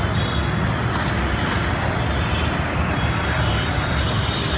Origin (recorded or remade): recorded